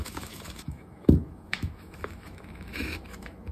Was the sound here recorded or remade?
remade